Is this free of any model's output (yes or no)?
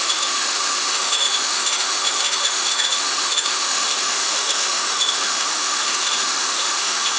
no